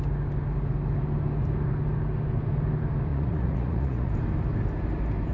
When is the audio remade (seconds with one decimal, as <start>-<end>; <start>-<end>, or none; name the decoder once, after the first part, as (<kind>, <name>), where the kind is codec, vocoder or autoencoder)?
3.1-4.1 (vocoder, Vocos)